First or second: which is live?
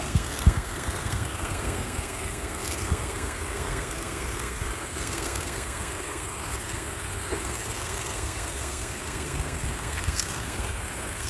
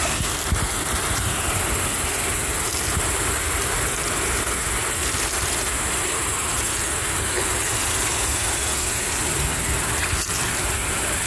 second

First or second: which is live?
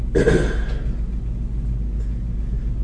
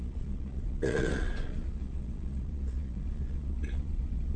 first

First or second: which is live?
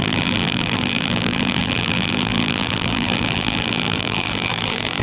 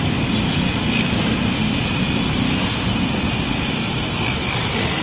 second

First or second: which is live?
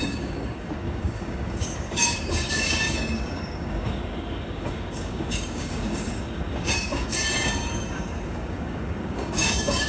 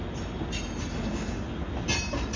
second